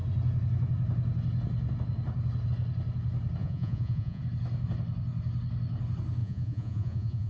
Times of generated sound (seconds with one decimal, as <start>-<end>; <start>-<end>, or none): 3.4-4.2; 6.2-7.3